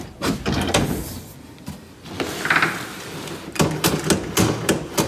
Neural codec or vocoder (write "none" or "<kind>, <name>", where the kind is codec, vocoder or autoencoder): none